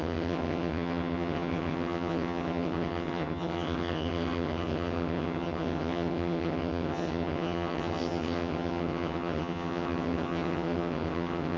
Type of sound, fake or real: fake